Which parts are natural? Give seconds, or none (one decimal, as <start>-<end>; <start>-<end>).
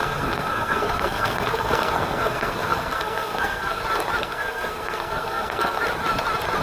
3.8-4.2; 5.8-6.6